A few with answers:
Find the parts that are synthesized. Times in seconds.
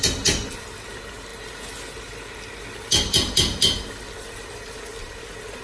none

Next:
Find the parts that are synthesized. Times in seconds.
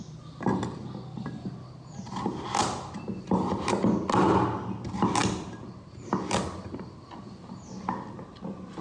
none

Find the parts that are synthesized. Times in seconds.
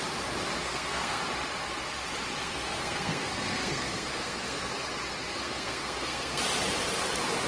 0.6-1.2 (codec, SNAC); 2.4-4.7; 5.3-6.4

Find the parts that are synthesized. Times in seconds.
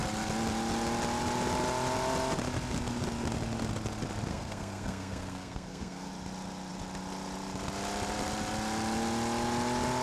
4.3-6.1 (codec, SNAC)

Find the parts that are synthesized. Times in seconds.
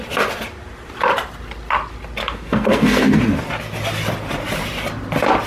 2.2-3.2 (codec, SNAC)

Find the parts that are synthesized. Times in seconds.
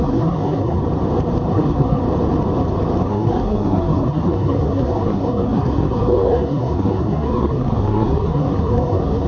0.0-0.8 (codec, SNAC); 1.5-2.0; 3.0-9.3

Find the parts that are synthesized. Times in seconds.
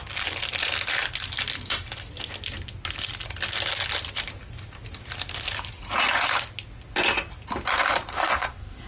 8.1-8.9 (codec, SNAC)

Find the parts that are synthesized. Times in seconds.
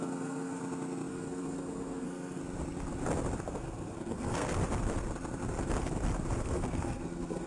0.0-0.6 (codec, SNAC); 1.1-2.4; 3.4-4.6; 6.4-7.5